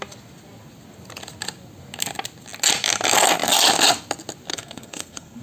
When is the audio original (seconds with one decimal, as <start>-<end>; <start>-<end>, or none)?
0.0-4.5